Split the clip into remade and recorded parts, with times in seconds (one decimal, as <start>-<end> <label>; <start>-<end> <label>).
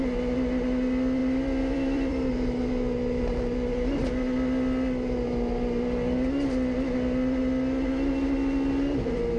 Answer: 0.0-1.2 recorded; 1.2-2.3 remade; 2.3-9.4 recorded